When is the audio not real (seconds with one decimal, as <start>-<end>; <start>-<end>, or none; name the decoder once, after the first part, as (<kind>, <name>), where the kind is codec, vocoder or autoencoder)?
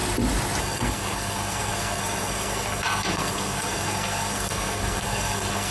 0.6-5.7 (codec, SNAC)